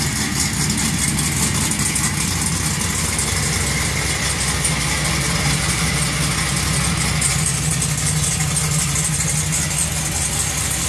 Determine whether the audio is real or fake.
real